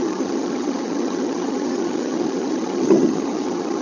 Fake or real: fake